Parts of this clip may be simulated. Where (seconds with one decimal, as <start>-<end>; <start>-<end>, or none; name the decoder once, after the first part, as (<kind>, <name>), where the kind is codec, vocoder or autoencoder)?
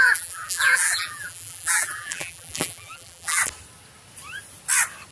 0.0-3.4 (vocoder, BigVGAN v2)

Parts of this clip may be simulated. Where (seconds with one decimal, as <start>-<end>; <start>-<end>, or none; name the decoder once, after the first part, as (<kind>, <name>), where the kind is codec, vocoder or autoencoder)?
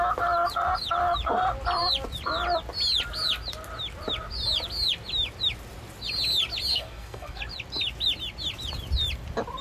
6.7-7.4 (codec, SNAC)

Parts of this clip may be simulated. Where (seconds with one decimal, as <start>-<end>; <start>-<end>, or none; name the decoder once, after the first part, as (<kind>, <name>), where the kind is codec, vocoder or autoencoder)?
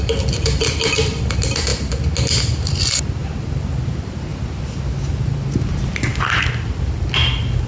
none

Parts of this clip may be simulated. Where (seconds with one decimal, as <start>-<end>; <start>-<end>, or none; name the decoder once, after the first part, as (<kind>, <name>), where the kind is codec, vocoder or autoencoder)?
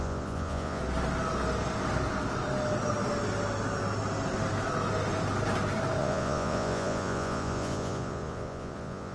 0.0-0.8 (vocoder, Vocos); 6.0-9.1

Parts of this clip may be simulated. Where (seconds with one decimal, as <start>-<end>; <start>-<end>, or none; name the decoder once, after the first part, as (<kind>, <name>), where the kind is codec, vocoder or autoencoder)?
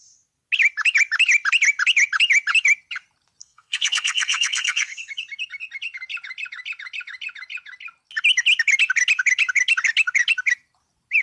3.4-5.1 (codec, SNAC)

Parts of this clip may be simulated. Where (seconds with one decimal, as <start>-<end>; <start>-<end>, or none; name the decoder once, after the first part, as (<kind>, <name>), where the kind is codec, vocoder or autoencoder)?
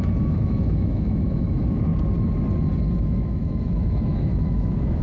0.0-1.9 (autoencoder, DAC-VAE); 2.9-5.0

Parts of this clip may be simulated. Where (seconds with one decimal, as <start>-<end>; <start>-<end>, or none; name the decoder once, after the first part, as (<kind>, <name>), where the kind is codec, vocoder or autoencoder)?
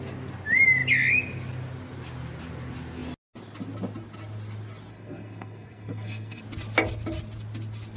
4.9-6.4 (codec, SNAC)